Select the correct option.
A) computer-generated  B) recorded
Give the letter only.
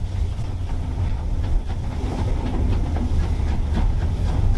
B